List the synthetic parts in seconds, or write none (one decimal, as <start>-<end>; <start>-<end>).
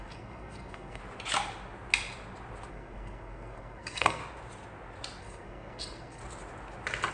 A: 0.0-1.0; 2.7-4.2; 5.2-6.2